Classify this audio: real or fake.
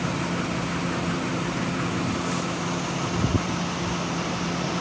real